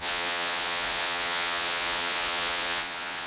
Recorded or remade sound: remade